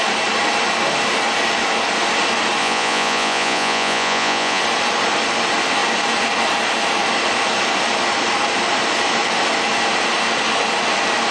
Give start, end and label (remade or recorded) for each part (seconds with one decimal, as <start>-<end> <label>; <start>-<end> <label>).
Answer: 0.0-2.6 recorded; 2.6-4.6 remade; 4.6-11.3 recorded